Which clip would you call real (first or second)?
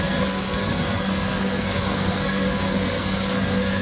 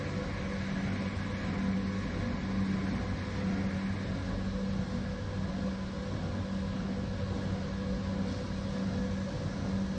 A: second